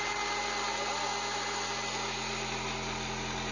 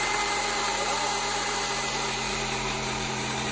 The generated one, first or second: second